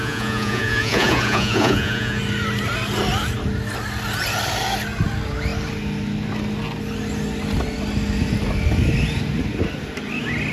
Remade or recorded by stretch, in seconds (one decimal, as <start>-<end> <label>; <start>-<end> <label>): 0.0-2.2 remade; 2.2-10.5 recorded